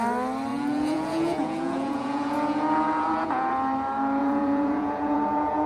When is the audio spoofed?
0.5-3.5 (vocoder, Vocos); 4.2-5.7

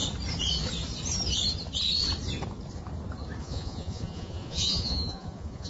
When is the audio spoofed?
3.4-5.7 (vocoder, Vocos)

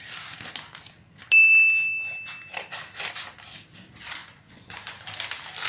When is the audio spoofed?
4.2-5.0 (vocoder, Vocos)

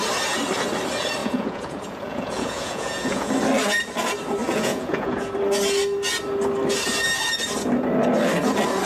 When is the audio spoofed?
1.2-3.3 (vocoder, Vocos); 4.4-5.3

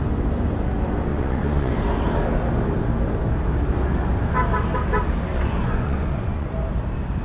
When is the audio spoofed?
1.1-1.7 (vocoder, Vocos); 5.3-6.5